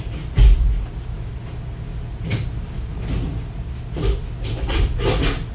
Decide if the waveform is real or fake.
real